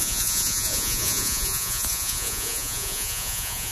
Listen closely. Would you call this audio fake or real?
fake